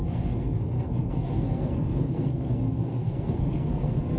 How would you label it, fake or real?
fake